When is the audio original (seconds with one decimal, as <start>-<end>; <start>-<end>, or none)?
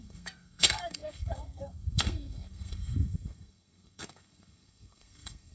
none